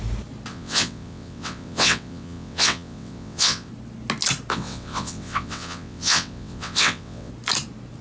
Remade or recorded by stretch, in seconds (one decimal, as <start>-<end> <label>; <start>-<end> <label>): 0.0-0.5 recorded; 0.5-3.7 remade; 3.7-4.5 recorded; 4.5-7.3 remade; 7.3-8.0 recorded